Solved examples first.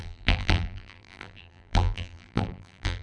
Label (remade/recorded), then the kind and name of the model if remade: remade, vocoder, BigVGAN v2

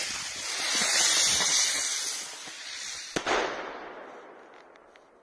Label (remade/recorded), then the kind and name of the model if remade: recorded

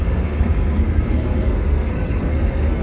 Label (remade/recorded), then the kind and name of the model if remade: remade, codec, SNAC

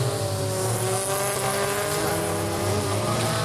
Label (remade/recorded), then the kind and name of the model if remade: recorded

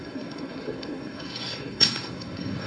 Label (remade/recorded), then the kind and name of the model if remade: remade, codec, SNAC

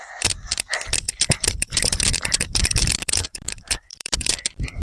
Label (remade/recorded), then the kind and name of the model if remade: remade, vocoder, BigVGAN v2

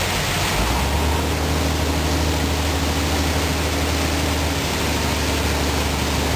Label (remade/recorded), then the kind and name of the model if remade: recorded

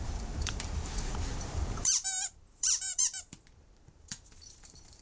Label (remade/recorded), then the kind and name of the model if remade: remade, vocoder, BigVGAN v2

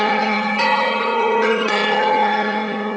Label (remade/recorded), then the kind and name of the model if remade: remade, vocoder, HiFi-GAN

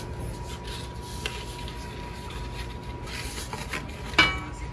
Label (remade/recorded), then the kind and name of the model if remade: recorded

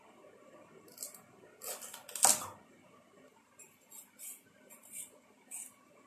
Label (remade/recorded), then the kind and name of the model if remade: recorded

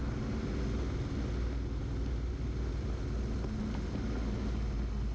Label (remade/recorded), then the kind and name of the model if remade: recorded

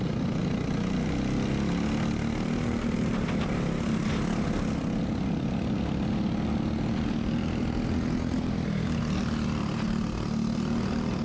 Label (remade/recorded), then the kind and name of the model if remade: recorded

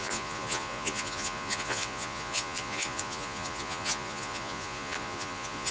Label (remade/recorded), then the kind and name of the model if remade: remade, vocoder, Vocos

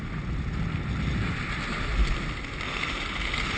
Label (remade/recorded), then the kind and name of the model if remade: recorded